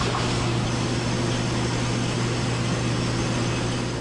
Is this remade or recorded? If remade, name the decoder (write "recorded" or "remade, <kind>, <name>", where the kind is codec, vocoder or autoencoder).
recorded